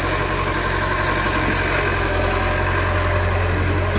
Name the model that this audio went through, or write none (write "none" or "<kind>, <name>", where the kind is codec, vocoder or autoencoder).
none